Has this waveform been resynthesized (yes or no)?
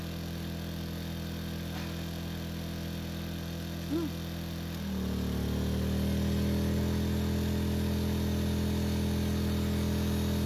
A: no